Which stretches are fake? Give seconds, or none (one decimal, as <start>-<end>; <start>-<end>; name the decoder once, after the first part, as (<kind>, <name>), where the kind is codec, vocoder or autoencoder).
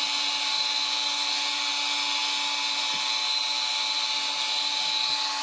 none